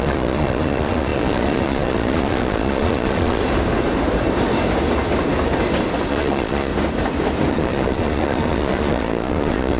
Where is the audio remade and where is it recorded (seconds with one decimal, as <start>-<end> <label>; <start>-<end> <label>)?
0.0-3.4 remade; 3.4-6.1 recorded; 6.1-6.7 remade; 6.7-7.5 recorded; 7.5-9.8 remade